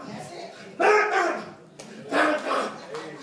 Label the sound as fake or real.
real